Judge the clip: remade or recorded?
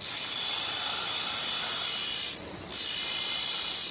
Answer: recorded